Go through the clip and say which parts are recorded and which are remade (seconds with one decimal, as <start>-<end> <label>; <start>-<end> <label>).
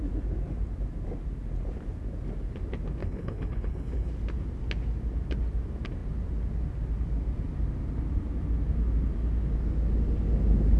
0.0-3.0 recorded; 3.0-4.1 remade; 4.1-10.8 recorded